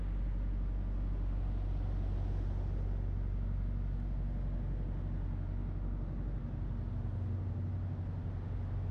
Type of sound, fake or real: real